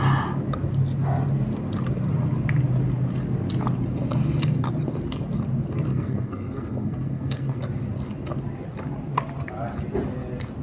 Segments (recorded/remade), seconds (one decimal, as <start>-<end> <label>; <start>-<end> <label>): 0.0-5.9 recorded; 5.9-7.6 remade; 7.6-10.6 recorded